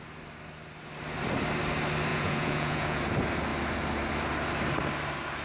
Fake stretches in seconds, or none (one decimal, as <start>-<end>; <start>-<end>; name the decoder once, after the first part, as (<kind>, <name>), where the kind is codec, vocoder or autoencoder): 2.1-3.0 (vocoder, Vocos)